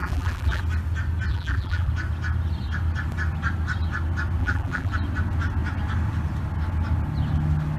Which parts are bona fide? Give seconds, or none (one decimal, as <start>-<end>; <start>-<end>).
0.6-1.3; 1.9-4.4; 4.9-7.8